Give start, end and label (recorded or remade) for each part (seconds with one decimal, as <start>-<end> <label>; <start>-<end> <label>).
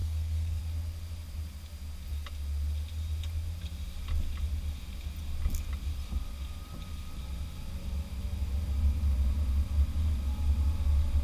0.0-0.6 remade; 0.6-11.2 recorded